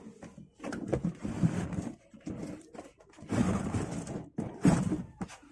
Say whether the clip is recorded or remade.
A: recorded